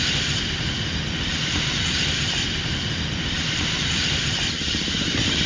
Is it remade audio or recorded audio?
remade